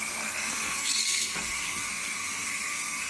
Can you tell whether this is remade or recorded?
remade